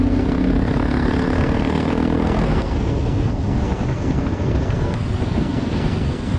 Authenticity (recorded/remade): remade